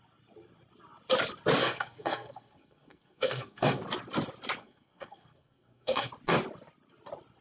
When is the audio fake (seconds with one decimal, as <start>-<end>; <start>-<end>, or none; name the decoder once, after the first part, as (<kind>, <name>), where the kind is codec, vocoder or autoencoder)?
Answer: 1.6-3.8 (codec, SNAC); 4.6-6.1